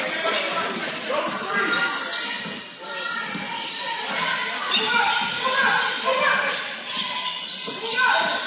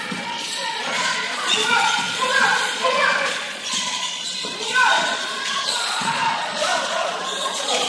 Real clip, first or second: first